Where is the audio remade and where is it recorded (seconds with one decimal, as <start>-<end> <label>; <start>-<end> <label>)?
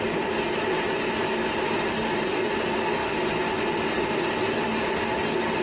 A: 0.0-5.6 recorded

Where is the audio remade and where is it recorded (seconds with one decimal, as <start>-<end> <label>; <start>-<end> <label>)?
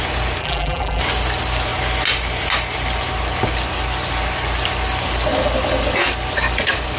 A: 0.0-0.4 recorded; 0.4-1.0 remade; 1.0-7.0 recorded